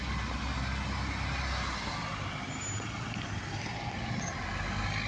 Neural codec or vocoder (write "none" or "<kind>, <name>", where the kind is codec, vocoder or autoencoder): none